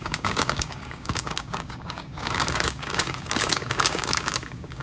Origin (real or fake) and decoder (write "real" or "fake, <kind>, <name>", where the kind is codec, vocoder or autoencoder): fake, codec, DAC